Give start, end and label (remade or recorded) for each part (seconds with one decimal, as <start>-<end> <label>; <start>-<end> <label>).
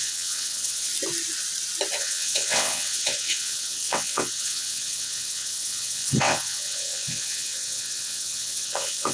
0.0-0.9 remade; 0.9-2.0 recorded; 2.0-9.1 remade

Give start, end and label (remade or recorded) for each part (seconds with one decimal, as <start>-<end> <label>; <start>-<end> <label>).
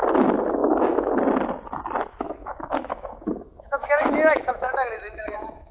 0.0-0.6 recorded; 0.6-1.1 remade; 1.1-2.1 recorded; 2.1-5.7 remade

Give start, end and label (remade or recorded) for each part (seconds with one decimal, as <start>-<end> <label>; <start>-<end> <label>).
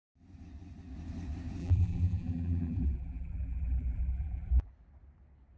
0.0-1.6 recorded; 1.6-4.7 remade; 4.7-5.6 recorded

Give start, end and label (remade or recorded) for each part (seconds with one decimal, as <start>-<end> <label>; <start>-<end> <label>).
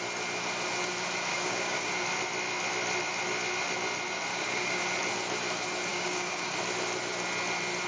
0.0-1.3 recorded; 1.3-1.9 remade; 1.9-4.3 recorded; 4.3-4.8 remade; 4.8-5.9 recorded; 5.9-6.5 remade; 6.5-7.9 recorded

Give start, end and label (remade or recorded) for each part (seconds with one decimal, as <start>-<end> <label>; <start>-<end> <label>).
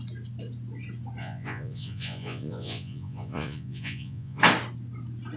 0.0-1.2 recorded; 1.2-4.4 remade; 4.4-5.4 recorded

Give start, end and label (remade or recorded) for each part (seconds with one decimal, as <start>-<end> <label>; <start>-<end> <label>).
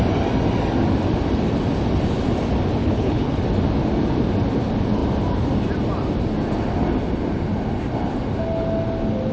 0.0-2.8 recorded; 2.8-3.4 remade; 3.4-9.3 recorded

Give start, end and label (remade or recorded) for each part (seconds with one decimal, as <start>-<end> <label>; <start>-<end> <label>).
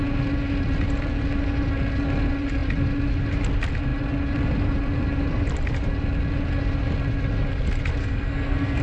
0.0-8.0 recorded; 8.0-8.8 remade